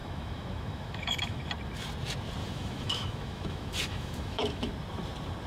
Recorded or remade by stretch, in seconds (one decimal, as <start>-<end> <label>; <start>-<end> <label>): 0.0-1.5 remade; 1.5-2.4 recorded; 2.4-4.7 remade; 4.7-5.5 recorded